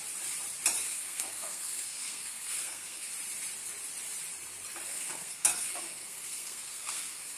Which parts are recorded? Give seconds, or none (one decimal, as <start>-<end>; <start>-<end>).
0.0-0.8; 3.1-4.9